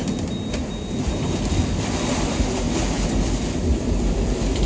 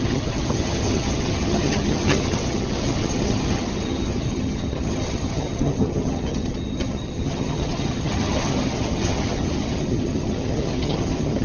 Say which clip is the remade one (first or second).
second